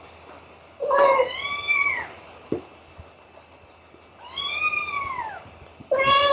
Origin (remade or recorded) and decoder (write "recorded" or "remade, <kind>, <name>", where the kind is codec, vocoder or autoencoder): recorded